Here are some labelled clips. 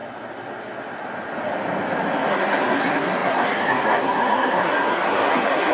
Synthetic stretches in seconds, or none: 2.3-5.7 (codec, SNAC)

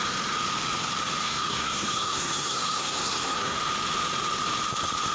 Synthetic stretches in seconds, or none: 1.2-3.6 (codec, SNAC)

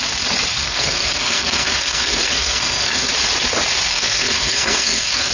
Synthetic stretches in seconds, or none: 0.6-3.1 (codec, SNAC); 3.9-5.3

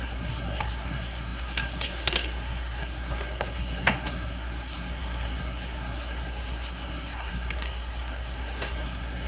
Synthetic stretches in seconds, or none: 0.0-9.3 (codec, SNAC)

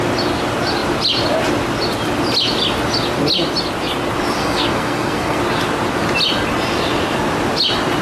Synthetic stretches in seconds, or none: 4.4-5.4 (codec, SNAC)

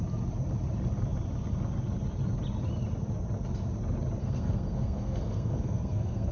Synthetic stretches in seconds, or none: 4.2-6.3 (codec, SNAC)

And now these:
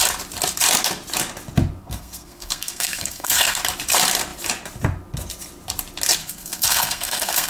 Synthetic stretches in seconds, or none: 1.8-3.6 (codec, SNAC); 6.2-7.5

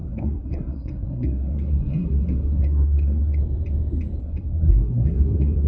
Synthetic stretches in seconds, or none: 0.0-3.4 (codec, SNAC); 4.2-5.7